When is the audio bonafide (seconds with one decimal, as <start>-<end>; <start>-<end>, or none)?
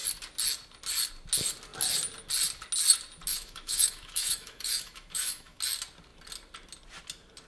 0.0-3.3; 5.6-7.5